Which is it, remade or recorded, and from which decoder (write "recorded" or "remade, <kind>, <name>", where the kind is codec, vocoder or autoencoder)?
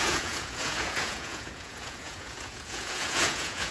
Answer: remade, vocoder, Vocos